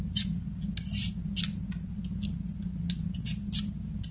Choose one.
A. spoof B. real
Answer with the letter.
B